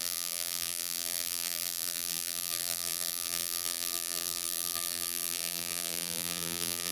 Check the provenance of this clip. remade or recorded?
remade